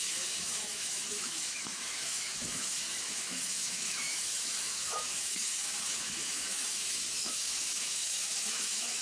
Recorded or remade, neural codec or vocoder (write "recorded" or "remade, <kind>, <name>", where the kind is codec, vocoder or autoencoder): remade, autoencoder, DAC-VAE